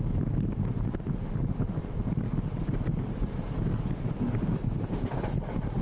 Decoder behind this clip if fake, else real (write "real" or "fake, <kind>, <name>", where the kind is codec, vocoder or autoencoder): real